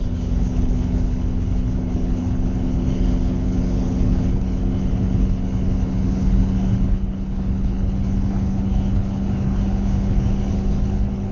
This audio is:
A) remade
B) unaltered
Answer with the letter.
A